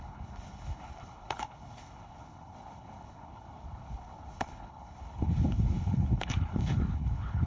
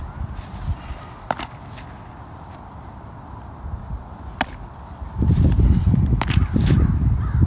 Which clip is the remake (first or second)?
first